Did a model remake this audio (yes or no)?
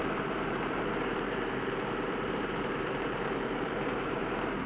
yes